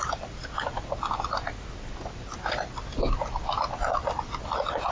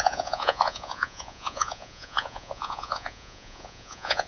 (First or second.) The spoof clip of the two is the second